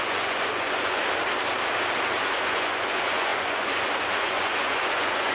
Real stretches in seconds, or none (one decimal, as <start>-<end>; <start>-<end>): 1.0-2.2